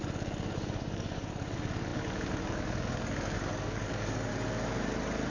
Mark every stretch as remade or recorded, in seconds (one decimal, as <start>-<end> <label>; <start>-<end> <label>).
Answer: 0.0-4.3 remade; 4.3-5.3 recorded